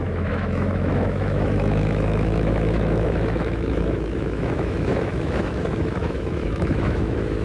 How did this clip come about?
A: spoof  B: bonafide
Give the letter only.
A